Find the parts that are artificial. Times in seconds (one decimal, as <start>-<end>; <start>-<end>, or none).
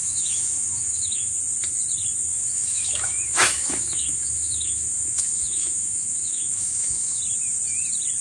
0.0-1.3; 2.3-7.2